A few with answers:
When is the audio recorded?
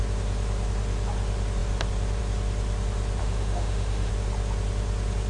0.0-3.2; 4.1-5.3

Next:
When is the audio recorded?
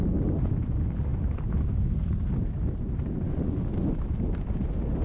0.0-5.0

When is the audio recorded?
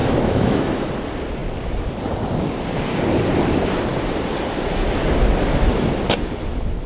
0.9-6.9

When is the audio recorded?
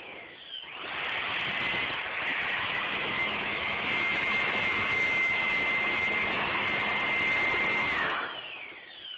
0.0-2.3; 6.9-7.8; 8.6-9.2